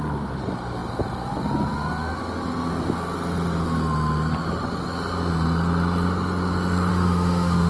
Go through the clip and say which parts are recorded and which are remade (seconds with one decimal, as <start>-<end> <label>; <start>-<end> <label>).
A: 0.0-6.9 recorded; 6.9-7.7 remade